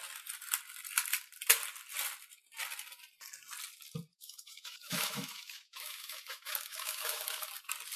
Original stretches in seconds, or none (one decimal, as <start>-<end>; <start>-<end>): 0.0-4.1; 7.5-8.0